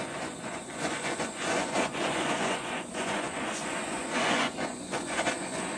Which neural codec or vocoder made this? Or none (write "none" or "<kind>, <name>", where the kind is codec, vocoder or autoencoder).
vocoder, Vocos